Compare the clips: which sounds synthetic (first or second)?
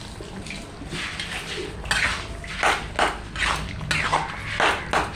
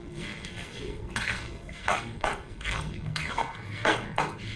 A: second